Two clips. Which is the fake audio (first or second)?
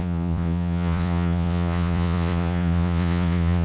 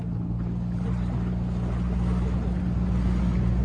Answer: first